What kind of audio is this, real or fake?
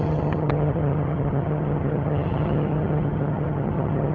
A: fake